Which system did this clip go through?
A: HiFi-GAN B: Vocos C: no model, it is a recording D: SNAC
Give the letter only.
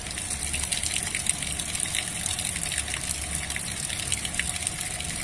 C